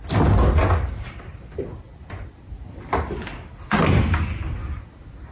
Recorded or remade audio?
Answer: recorded